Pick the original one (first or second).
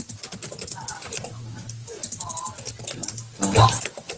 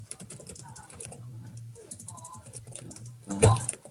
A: first